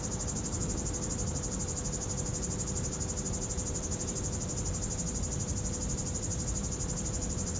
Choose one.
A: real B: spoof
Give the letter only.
A